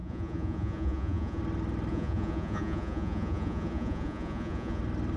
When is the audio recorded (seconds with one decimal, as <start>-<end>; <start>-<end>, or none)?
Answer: 1.4-1.9; 4.8-5.2

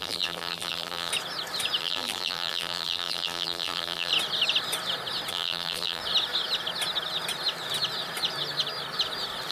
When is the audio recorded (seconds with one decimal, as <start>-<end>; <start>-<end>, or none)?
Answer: 1.1-1.8; 4.1-5.3; 6.0-9.5

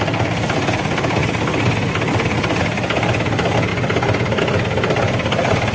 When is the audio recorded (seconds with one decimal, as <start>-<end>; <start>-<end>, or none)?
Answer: 0.0-5.7

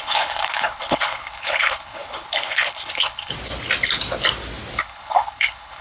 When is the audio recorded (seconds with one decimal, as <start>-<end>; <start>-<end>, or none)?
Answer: 3.3-4.8

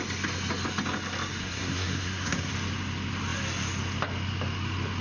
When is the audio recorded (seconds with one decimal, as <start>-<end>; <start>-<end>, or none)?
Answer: 0.0-1.4; 2.5-5.0